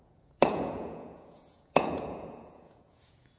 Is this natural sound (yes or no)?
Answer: no